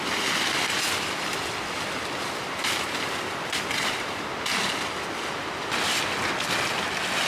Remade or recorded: recorded